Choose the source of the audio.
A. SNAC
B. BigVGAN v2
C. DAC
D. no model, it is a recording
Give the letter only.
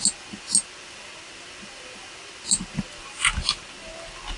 D